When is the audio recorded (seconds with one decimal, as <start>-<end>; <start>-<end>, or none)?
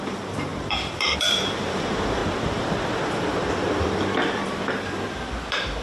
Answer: 2.2-5.8